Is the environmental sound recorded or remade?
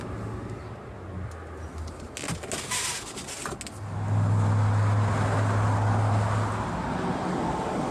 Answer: recorded